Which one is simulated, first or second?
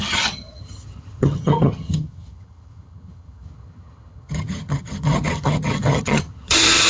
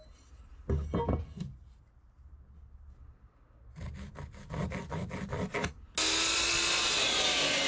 first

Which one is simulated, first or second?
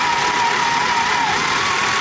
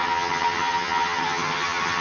second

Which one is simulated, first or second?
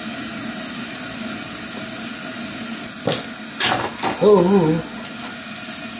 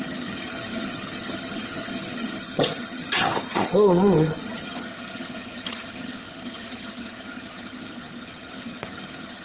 second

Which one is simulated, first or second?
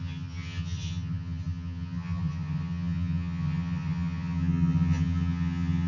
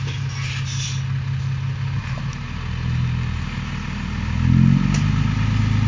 first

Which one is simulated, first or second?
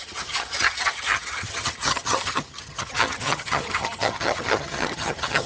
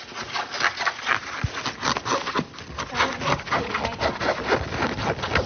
first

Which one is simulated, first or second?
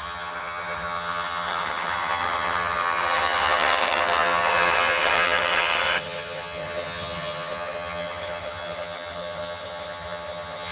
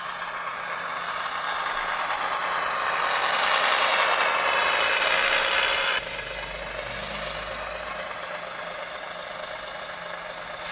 first